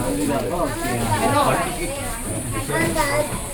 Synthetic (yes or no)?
no